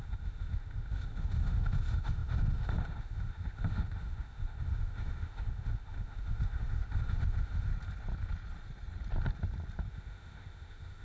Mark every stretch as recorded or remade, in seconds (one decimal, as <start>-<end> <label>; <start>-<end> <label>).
0.0-7.7 remade; 7.7-9.9 recorded; 9.9-11.0 remade